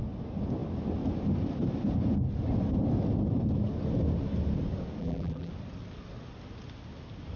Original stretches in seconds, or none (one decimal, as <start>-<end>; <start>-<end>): 0.0-5.0; 5.5-7.4